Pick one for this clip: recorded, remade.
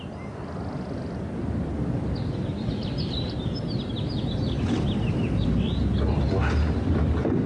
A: recorded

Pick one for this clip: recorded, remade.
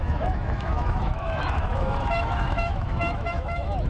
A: remade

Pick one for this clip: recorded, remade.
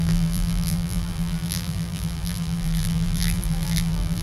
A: remade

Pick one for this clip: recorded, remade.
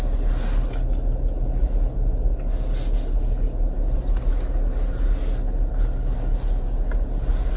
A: recorded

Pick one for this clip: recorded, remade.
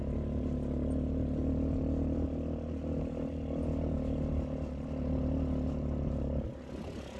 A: recorded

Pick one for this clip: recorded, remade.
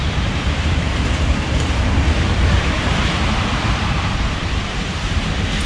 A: remade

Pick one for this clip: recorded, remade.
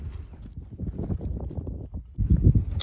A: recorded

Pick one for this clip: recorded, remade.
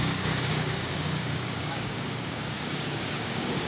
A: remade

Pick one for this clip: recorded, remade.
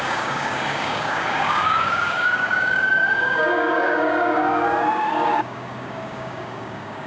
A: remade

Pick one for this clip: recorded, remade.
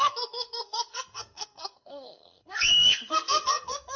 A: remade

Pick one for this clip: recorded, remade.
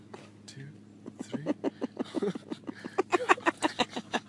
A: recorded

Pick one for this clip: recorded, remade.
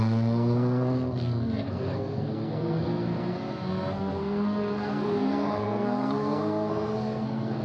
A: remade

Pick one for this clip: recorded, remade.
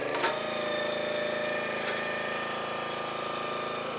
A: recorded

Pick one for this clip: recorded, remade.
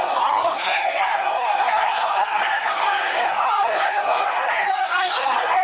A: remade